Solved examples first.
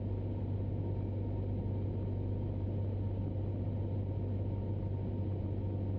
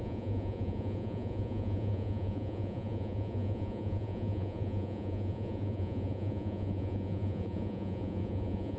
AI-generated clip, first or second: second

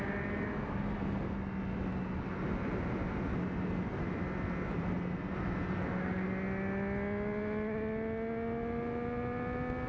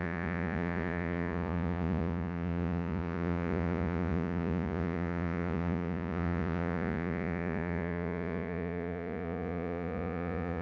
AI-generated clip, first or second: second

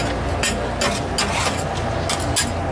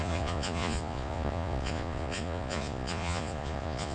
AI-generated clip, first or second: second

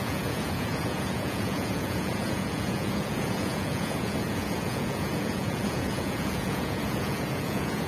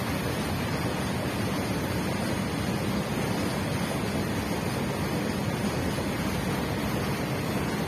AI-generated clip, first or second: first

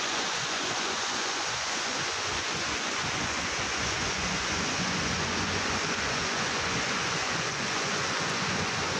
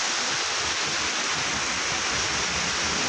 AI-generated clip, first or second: first